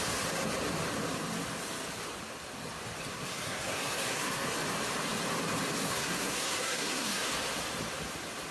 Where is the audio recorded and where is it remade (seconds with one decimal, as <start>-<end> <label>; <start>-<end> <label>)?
0.0-3.1 recorded; 3.1-4.5 remade; 4.5-5.8 recorded; 5.8-7.3 remade; 7.3-8.5 recorded